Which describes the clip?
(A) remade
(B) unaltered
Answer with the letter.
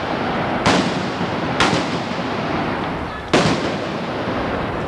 B